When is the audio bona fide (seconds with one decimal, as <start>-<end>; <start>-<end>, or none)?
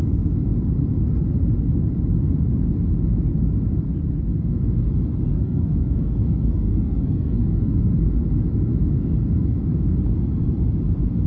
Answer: 0.0-5.3; 7.7-11.3